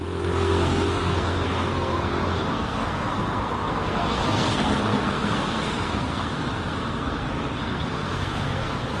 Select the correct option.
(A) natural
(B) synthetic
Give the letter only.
B